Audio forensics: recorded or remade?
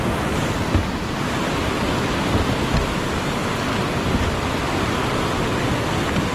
recorded